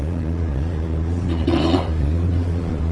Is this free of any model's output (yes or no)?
no